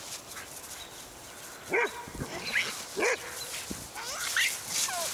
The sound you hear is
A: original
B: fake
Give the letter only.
A